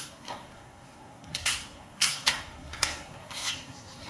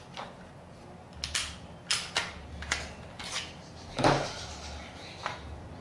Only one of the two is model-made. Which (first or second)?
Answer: first